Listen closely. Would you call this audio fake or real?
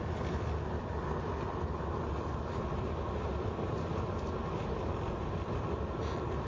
fake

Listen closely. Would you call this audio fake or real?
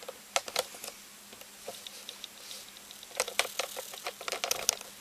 real